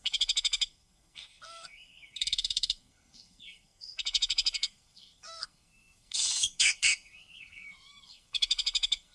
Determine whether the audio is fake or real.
fake